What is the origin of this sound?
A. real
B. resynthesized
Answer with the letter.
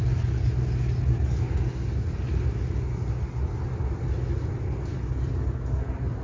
A